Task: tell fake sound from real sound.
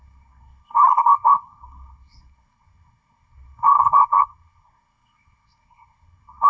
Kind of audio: fake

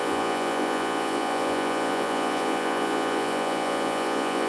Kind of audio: fake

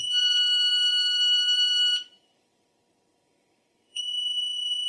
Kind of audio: fake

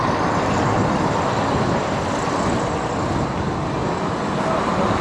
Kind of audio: real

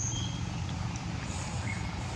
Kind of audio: real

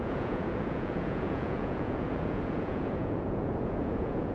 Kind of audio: fake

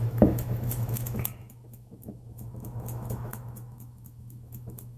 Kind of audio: fake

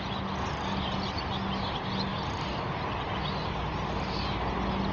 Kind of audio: real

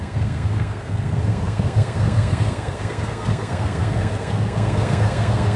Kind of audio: fake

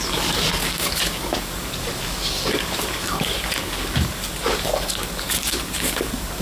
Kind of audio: fake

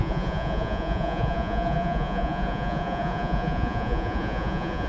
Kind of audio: fake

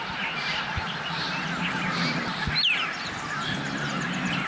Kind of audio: real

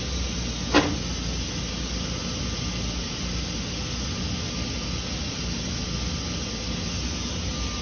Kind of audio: real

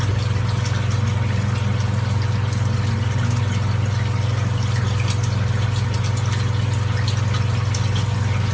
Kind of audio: real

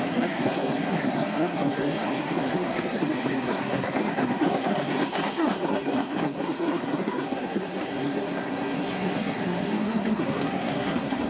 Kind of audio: fake